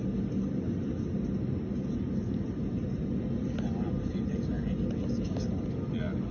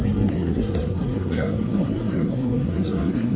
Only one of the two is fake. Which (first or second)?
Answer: second